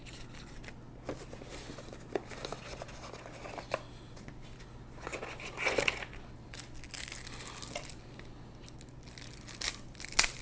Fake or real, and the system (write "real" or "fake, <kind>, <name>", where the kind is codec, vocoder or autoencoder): real